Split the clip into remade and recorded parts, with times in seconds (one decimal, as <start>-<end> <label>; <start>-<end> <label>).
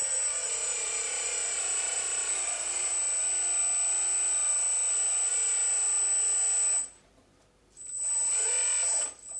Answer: 0.0-2.9 remade; 2.9-9.4 recorded